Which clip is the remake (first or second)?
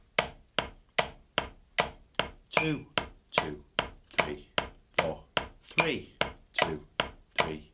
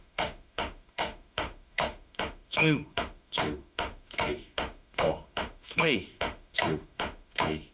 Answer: second